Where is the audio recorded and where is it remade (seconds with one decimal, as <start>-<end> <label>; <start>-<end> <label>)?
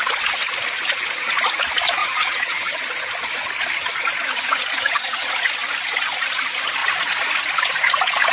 0.0-2.0 recorded; 2.0-2.8 remade; 2.8-4.8 recorded; 4.8-5.3 remade; 5.3-8.3 recorded